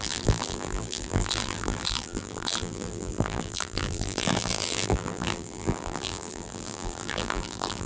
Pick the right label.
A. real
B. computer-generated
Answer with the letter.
B